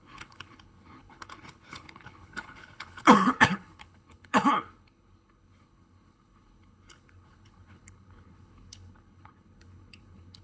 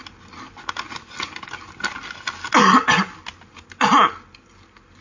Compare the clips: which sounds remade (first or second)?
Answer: first